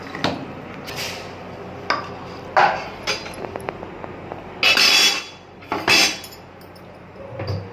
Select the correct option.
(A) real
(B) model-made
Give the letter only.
A